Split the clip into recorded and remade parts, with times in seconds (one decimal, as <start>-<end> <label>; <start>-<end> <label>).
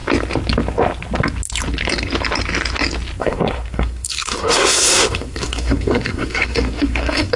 0.0-3.2 recorded; 3.2-7.4 remade